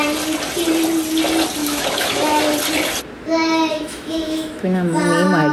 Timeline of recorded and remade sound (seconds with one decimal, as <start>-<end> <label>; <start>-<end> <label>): 0.0-1.6 recorded; 1.6-2.4 remade; 2.4-3.7 recorded; 3.7-5.0 remade; 5.0-5.5 recorded